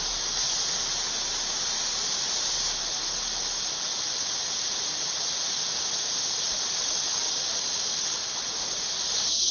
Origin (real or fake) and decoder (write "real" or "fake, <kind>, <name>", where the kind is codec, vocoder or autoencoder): real